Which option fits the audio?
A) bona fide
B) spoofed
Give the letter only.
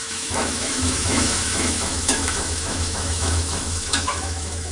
B